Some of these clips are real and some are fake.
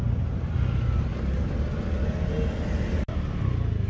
real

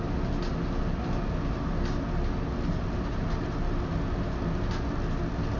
real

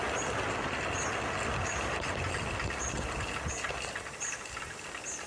real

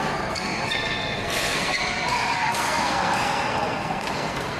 fake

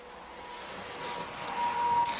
real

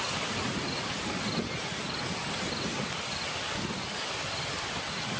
real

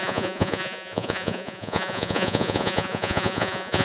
fake